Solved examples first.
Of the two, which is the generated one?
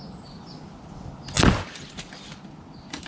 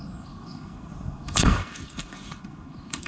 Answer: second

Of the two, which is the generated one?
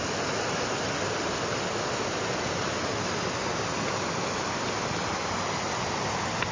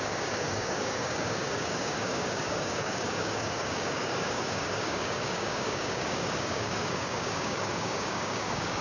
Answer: second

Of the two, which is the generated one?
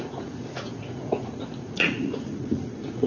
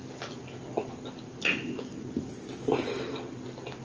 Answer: first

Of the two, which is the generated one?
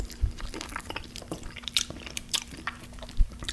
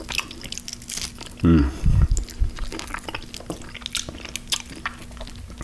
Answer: first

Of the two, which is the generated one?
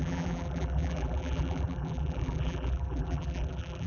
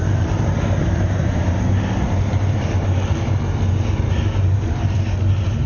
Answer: first